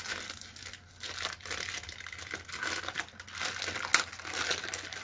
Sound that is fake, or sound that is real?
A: real